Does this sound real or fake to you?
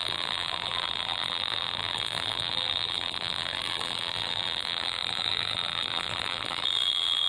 fake